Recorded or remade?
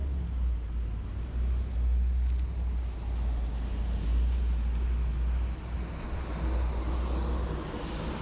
recorded